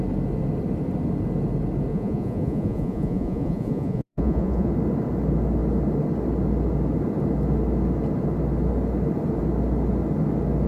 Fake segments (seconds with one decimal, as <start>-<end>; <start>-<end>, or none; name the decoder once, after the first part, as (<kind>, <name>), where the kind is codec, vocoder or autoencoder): 1.9-4.7 (vocoder, Vocos)